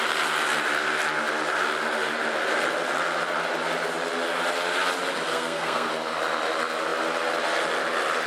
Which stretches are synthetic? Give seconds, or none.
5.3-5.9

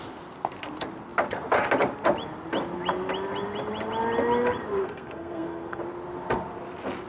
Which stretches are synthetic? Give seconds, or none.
4.8-5.8